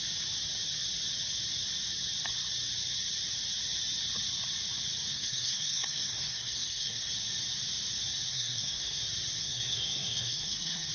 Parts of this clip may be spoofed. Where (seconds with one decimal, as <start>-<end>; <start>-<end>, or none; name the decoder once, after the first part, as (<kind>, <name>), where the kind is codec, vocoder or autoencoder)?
5.1-7.1 (codec, SNAC); 8.3-9.0; 9.4-10.9